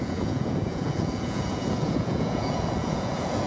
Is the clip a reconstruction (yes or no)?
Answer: yes